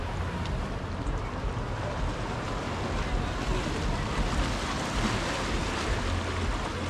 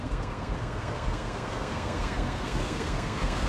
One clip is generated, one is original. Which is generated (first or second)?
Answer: second